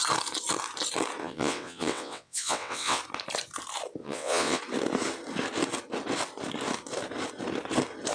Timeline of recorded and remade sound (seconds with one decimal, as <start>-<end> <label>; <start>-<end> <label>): 0.0-1.2 recorded; 1.2-3.0 remade; 3.0-4.0 recorded; 4.0-4.6 remade; 4.6-8.1 recorded